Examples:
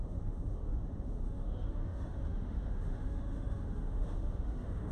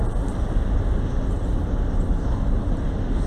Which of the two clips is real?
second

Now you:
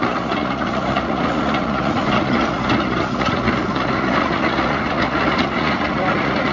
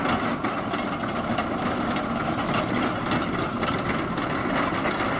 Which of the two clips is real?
second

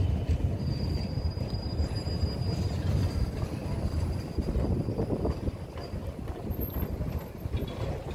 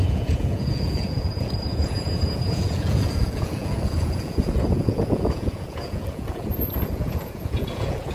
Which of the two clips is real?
first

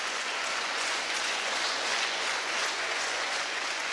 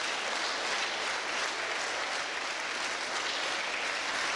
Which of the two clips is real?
second